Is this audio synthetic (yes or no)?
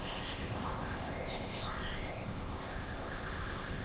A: yes